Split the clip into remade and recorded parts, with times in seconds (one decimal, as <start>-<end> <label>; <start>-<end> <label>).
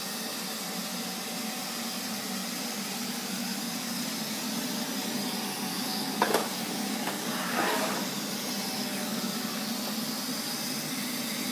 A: 0.0-3.0 recorded; 3.0-4.0 remade; 4.0-5.7 recorded; 5.7-7.8 remade; 7.8-8.9 recorded; 8.9-9.7 remade; 9.7-11.5 recorded